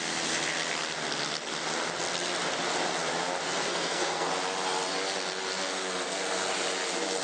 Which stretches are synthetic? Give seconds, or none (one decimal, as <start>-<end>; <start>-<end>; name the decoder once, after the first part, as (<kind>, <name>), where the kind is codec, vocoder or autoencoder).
3.6-4.3 (codec, SNAC)

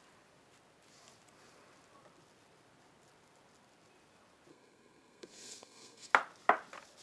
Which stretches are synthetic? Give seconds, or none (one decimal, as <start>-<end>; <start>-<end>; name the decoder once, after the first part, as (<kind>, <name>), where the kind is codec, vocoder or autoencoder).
4.5-6.1 (codec, SNAC)

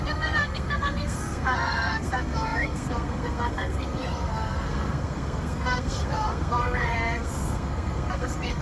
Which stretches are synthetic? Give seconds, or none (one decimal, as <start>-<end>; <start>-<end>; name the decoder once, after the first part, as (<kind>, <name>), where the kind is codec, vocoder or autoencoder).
0.0-8.6 (codec, SNAC)

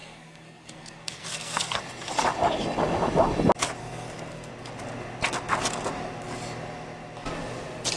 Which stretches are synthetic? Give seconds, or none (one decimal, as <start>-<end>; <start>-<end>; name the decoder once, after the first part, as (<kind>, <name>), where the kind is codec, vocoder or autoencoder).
0.0-1.8 (codec, SNAC); 3.8-4.5